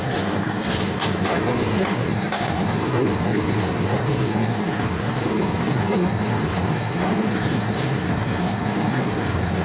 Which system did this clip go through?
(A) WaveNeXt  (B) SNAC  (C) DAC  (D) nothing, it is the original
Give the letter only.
B